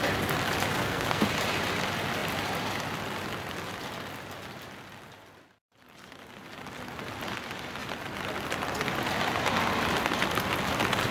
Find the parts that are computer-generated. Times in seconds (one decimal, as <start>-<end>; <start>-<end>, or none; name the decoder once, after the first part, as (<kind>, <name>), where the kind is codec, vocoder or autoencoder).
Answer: 0.7-1.3 (codec, SNAC)